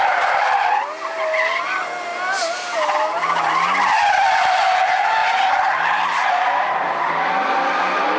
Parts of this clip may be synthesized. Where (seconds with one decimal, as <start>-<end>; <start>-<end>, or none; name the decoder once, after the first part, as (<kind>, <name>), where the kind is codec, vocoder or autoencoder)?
none